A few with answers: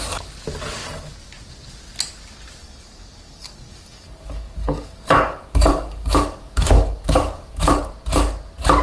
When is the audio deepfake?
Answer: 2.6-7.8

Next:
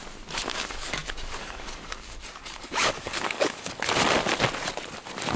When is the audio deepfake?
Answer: 0.5-3.7

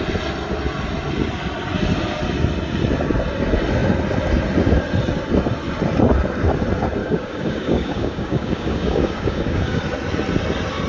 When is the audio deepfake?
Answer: 7.0-9.8

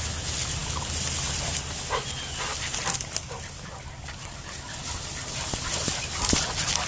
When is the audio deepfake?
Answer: none

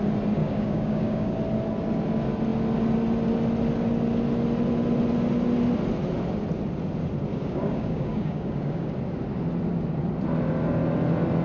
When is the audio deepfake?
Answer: 0.4-1.4; 7.3-8.9

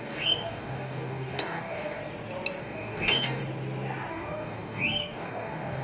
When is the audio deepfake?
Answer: 0.0-2.0; 2.6-3.4; 4.1-5.8

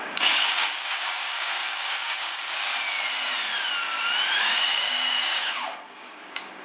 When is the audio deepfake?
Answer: 0.0-2.7; 4.4-6.6

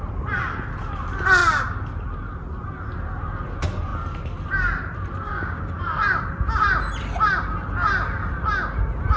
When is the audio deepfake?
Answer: 5.3-5.8